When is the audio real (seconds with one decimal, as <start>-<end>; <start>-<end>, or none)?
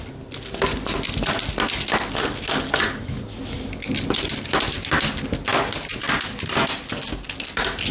0.0-7.9